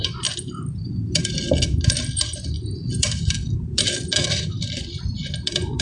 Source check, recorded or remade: remade